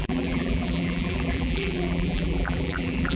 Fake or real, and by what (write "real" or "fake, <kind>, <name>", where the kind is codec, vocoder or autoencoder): fake, vocoder, BigVGAN v2